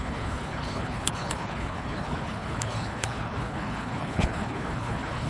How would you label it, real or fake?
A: fake